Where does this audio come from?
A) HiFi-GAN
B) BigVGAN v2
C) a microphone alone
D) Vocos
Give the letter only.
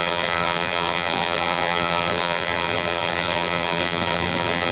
B